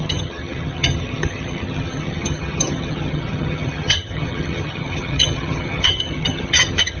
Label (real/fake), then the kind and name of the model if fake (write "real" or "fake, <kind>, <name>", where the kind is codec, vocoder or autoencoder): fake, vocoder, HiFi-GAN